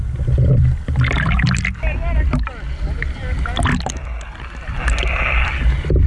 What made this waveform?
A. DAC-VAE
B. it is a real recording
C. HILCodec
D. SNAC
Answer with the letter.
B